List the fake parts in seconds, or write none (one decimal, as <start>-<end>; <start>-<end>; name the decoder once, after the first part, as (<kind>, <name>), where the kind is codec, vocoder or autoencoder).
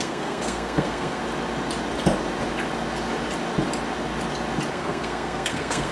0.0-1.2 (codec, SNAC); 4.7-5.9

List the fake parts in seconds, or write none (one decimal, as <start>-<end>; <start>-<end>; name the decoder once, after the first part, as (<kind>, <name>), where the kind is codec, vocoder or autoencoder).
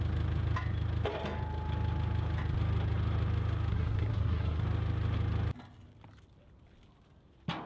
3.7-4.6 (codec, SNAC)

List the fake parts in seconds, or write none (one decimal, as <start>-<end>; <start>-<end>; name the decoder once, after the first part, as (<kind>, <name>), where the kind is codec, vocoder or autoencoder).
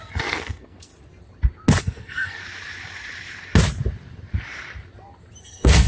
0.0-0.9 (codec, SNAC); 1.8-2.4; 5.4-5.9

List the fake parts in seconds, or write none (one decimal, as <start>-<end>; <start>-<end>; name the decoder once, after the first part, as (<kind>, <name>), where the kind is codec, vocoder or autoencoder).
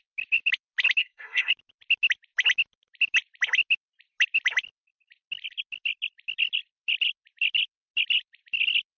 1.0-1.5 (codec, SNAC)